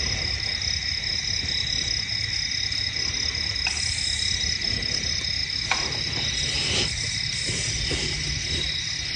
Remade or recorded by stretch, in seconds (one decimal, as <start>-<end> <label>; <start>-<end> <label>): 0.0-9.2 recorded